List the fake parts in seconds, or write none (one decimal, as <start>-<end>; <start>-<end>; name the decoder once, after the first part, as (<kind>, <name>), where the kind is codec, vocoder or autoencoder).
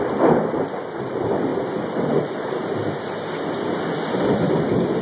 none